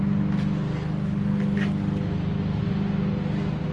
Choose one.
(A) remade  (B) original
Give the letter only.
B